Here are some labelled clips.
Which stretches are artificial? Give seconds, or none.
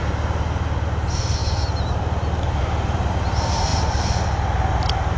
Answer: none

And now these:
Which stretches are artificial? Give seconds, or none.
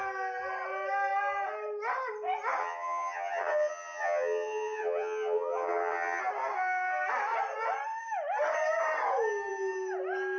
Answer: 2.6-6.2 (vocoder, HiFi-GAN)